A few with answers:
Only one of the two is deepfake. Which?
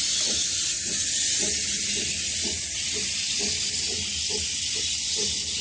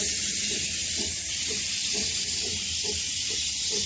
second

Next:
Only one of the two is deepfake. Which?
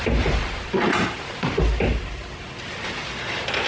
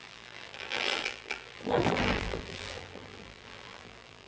second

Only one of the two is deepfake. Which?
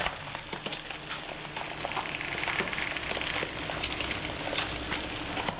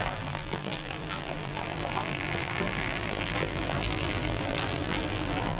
second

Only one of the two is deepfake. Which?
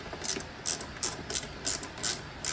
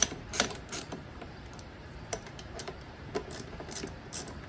second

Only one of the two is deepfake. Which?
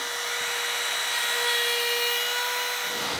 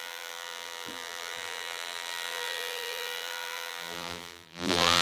second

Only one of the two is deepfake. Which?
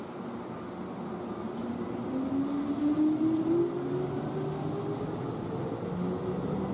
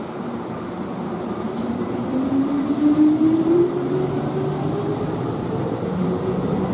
second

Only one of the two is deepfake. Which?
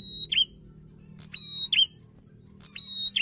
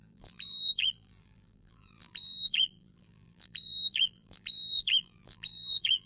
second